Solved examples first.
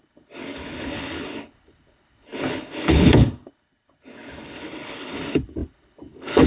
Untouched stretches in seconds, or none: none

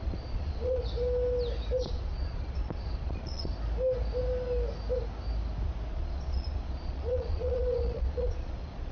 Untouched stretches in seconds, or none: 0.8-1.8; 3.5-5.9

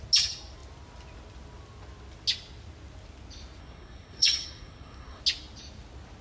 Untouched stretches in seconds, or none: 0.0-3.6; 5.2-6.2

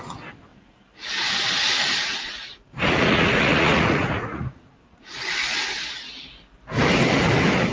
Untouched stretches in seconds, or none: 0.0-2.1; 6.0-7.7